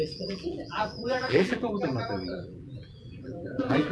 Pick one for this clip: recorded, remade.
remade